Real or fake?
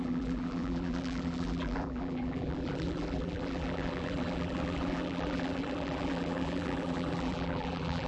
fake